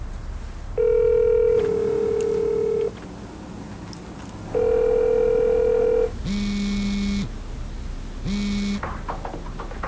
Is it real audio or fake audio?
real